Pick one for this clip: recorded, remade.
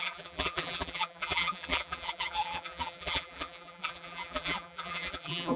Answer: remade